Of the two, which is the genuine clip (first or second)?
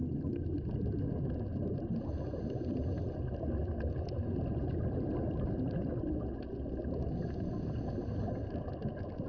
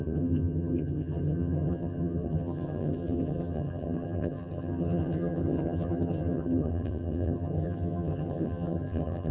first